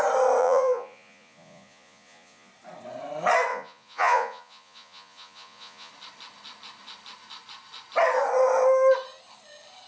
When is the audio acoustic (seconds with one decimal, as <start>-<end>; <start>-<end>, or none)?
0.0-0.4; 2.5-3.5; 5.9-9.9